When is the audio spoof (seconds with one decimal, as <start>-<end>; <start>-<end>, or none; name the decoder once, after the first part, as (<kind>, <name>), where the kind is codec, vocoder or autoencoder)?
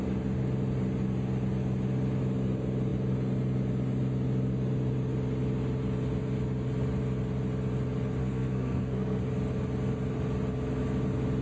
8.2-9.2 (codec, SNAC)